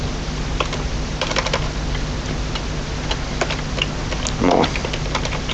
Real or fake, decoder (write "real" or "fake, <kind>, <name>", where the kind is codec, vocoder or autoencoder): real